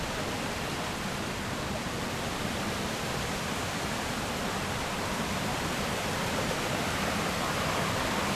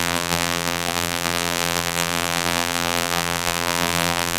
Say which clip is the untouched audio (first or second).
first